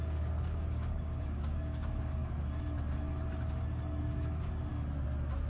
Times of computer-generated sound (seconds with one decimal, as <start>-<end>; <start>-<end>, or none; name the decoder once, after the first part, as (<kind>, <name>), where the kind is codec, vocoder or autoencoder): 0.0-2.2 (codec, DAC); 4.0-4.7